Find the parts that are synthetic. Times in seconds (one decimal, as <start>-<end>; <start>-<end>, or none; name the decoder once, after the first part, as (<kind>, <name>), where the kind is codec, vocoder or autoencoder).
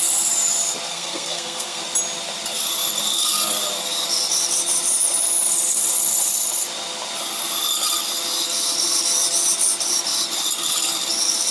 0.9-1.8 (codec, SNAC)